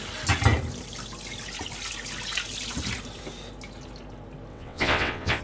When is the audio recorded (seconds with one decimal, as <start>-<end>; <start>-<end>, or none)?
0.0-4.5